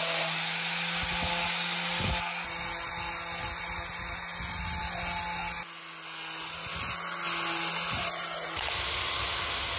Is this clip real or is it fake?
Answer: real